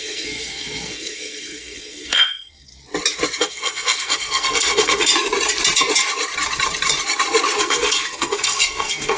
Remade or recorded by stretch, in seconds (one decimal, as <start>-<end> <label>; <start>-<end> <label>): 0.0-2.7 remade; 2.7-3.4 recorded; 3.4-5.1 remade; 5.1-7.6 recorded; 7.6-9.2 remade